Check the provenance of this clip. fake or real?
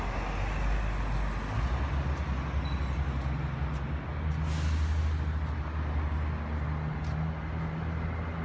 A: real